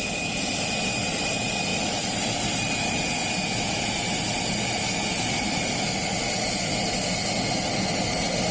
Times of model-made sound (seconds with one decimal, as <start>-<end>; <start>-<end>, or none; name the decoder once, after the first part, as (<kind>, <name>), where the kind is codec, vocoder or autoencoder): 1.7-3.3 (vocoder, BigVGAN v2)